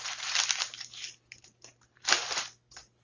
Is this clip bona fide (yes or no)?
yes